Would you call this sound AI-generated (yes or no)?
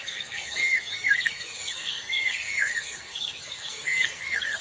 yes